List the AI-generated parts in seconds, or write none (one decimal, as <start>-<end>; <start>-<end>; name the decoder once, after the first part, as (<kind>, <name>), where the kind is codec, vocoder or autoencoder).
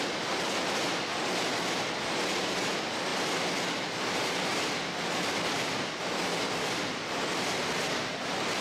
none